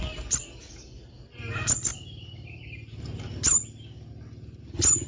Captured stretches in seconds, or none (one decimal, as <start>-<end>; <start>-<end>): 0.0-5.1